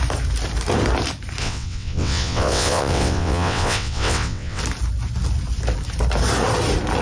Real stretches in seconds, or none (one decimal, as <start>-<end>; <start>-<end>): 0.0-1.4; 4.6-7.0